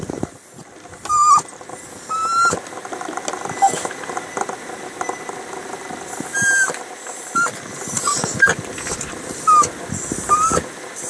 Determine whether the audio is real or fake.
real